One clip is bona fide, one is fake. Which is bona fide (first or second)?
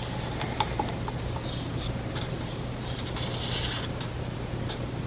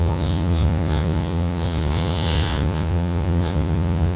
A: first